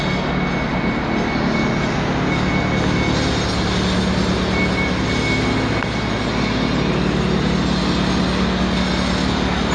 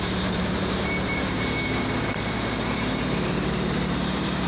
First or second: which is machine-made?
second